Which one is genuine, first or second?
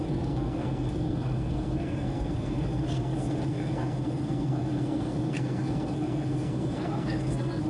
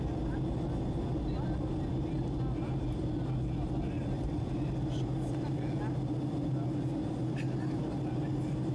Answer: second